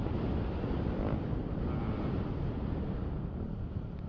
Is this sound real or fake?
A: real